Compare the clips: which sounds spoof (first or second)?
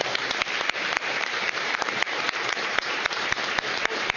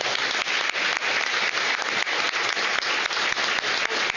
first